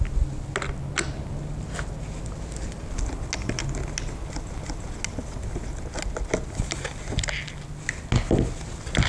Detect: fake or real real